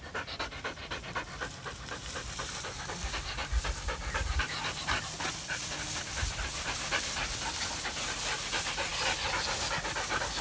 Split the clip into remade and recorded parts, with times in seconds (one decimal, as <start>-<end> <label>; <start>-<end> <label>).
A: 0.0-0.8 recorded; 0.8-2.4 remade; 2.4-10.4 recorded